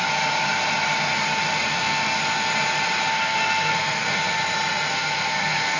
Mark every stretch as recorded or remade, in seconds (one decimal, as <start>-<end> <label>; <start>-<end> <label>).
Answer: 0.0-1.7 recorded; 1.7-2.2 remade; 2.2-3.1 recorded; 3.1-4.4 remade; 4.4-4.9 recorded; 4.9-5.8 remade